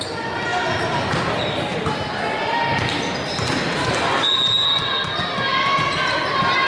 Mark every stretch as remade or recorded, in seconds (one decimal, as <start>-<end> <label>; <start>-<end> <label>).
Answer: 0.0-6.7 recorded